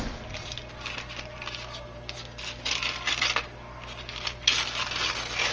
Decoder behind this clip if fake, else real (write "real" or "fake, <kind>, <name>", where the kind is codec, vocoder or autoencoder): real